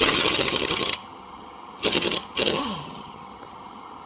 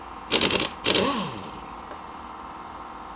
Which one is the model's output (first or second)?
first